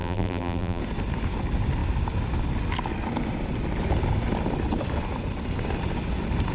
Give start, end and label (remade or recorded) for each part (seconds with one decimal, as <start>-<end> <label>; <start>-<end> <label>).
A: 0.0-0.8 remade; 0.8-6.5 recorded